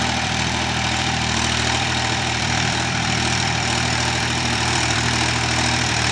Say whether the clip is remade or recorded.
remade